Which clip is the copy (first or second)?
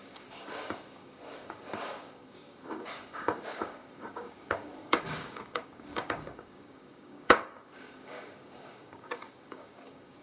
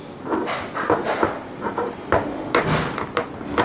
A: first